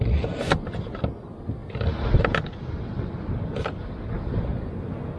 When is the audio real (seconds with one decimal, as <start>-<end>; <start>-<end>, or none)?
0.0-5.2